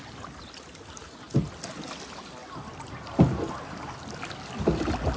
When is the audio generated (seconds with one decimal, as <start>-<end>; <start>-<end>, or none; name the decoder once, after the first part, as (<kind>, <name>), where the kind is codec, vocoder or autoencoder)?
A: none